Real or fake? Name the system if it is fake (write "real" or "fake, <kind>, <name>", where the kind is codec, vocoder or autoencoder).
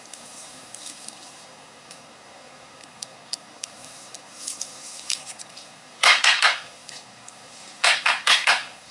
fake, codec, SNAC